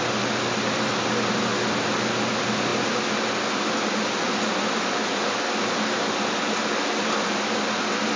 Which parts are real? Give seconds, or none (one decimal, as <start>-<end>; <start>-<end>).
0.0-8.2